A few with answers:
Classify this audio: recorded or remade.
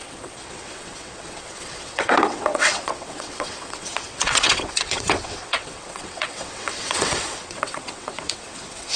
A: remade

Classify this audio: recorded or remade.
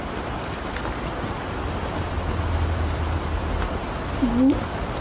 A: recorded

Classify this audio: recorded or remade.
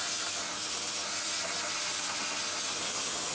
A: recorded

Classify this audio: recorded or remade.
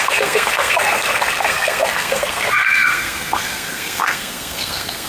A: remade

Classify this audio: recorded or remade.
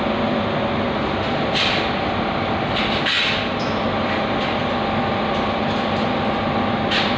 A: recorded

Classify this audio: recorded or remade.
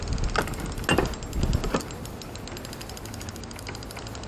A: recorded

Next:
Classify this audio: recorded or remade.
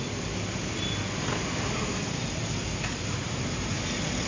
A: recorded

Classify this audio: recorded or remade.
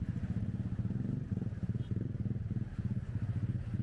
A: recorded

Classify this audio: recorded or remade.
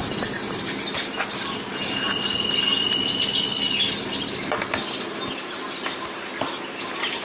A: recorded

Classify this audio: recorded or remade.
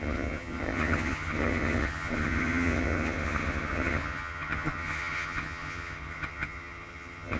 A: remade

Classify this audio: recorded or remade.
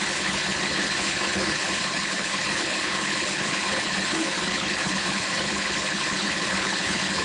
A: remade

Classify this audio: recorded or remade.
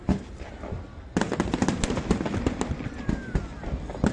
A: recorded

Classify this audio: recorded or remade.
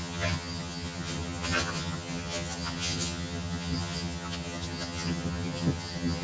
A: remade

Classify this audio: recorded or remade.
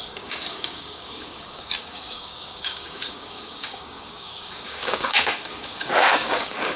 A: remade